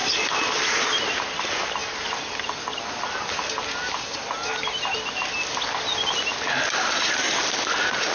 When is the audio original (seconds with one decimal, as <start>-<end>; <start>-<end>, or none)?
0.0-8.1